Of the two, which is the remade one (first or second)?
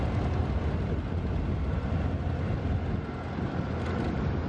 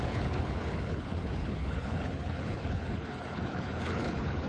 second